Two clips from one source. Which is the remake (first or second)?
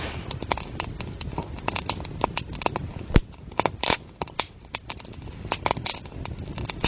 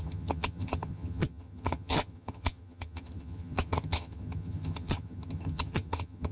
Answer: second